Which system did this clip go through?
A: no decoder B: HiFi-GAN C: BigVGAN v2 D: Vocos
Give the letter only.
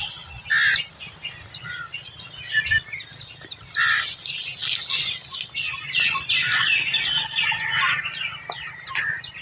A